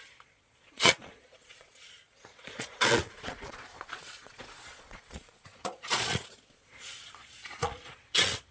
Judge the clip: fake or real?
fake